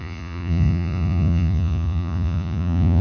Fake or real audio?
fake